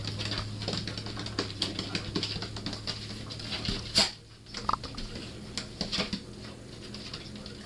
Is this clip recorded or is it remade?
recorded